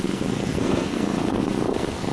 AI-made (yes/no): yes